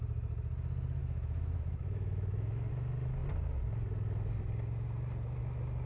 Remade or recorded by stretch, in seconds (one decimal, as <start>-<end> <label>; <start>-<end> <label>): 0.0-1.0 recorded; 1.0-2.7 remade; 2.7-5.9 recorded

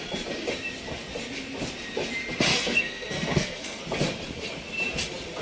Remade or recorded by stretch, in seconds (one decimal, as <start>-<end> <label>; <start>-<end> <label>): 0.0-2.5 recorded; 2.5-3.8 remade; 3.8-5.4 recorded

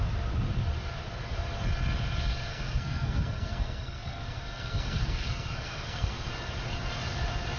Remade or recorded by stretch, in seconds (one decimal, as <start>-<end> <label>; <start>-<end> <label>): 0.0-2.5 recorded; 2.5-6.3 remade; 6.3-7.6 recorded

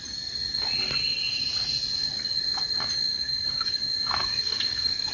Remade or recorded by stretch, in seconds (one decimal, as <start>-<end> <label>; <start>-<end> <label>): 0.0-3.1 recorded; 3.1-3.8 remade; 3.8-4.3 recorded; 4.3-5.1 remade

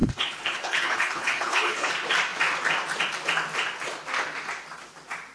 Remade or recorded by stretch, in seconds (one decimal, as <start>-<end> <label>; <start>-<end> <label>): 0.0-1.9 remade; 1.9-5.3 recorded

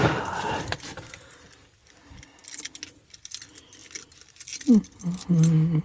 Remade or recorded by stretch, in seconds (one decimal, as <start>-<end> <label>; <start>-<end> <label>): 0.0-5.8 recorded

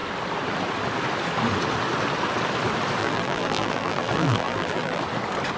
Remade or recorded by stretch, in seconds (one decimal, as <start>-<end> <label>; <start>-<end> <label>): 0.0-3.0 recorded; 3.0-5.0 remade; 5.0-5.6 recorded

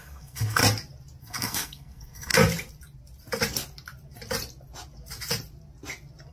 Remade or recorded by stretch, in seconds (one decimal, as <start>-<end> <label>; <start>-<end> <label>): 0.0-0.6 remade; 0.6-1.2 recorded; 1.2-2.3 remade; 2.3-6.3 recorded